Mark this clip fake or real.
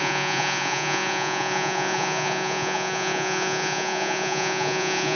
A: fake